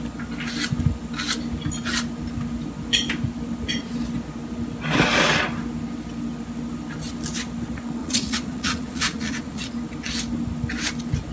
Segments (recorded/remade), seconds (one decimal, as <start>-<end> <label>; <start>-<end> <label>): 0.0-8.0 recorded; 8.0-9.7 remade; 9.7-11.3 recorded